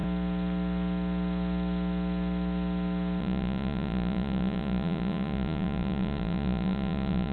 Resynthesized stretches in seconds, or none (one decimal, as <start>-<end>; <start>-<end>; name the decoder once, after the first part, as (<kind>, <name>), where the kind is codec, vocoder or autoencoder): 3.2-7.3 (vocoder, Vocos)